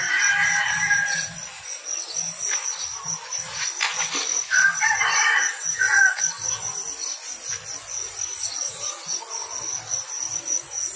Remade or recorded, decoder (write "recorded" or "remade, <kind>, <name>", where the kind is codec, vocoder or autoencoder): recorded